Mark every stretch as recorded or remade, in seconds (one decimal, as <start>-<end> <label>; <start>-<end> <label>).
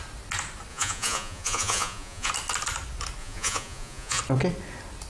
0.0-0.7 recorded; 0.7-2.3 remade; 2.3-3.2 recorded; 3.2-4.2 remade; 4.2-5.1 recorded